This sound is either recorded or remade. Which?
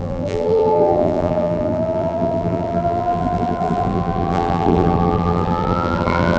remade